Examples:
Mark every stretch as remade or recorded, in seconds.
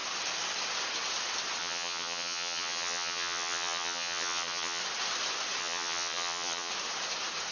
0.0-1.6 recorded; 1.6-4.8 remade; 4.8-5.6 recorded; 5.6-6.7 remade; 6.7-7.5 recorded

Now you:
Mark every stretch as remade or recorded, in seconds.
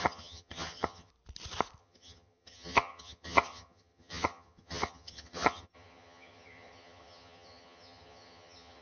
0.0-1.1 remade; 1.1-1.8 recorded; 1.8-8.8 remade